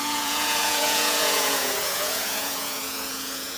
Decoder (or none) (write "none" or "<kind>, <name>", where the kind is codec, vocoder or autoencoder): vocoder, Vocos